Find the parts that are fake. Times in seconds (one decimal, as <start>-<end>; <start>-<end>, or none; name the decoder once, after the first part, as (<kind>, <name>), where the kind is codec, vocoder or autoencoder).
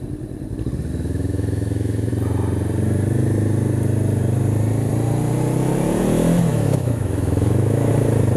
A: 0.9-2.1 (autoencoder, DAC-VAE); 6.5-7.9